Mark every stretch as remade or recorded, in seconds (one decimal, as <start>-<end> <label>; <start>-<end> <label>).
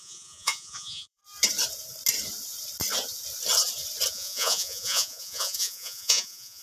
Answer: 0.0-1.2 remade; 1.2-4.1 recorded; 4.1-6.6 remade